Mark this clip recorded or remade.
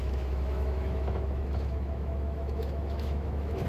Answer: remade